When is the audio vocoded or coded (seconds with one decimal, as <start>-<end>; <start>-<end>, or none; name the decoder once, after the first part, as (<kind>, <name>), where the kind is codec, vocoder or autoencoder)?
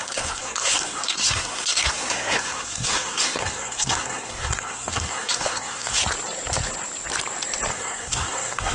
0.0-6.0 (codec, SNAC); 7.7-8.7